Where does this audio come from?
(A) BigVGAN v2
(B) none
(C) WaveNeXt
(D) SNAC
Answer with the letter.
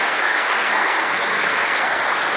D